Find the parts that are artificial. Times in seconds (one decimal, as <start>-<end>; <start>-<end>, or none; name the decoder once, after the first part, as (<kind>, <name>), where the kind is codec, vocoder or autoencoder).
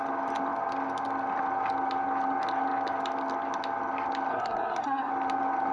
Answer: 4.3-5.1 (codec, SNAC)